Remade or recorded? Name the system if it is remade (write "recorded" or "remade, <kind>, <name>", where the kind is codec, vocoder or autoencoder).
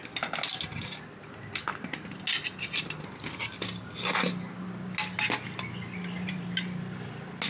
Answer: recorded